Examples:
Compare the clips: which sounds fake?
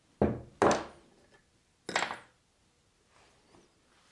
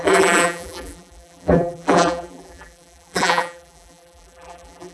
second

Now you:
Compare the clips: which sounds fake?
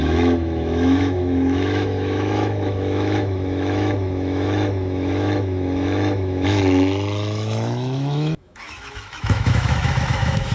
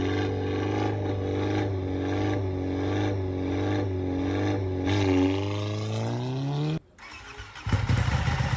first